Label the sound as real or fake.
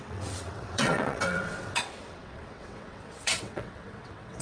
fake